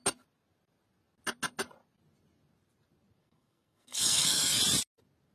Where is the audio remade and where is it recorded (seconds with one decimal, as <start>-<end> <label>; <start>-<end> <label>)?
0.0-3.2 recorded; 3.2-4.6 remade; 4.6-5.3 recorded